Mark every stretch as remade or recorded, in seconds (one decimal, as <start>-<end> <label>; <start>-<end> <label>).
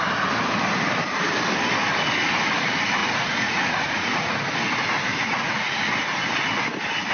0.0-3.0 recorded; 3.0-4.2 remade; 4.2-5.1 recorded; 5.1-5.8 remade; 5.8-7.1 recorded